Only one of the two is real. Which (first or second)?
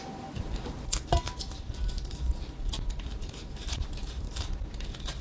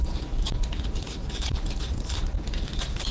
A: first